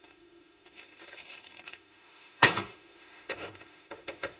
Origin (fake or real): fake